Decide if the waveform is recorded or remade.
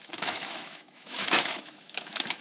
remade